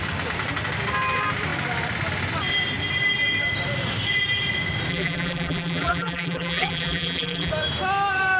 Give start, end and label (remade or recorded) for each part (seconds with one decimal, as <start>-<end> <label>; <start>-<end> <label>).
0.0-4.9 recorded; 4.9-7.5 remade; 7.5-8.4 recorded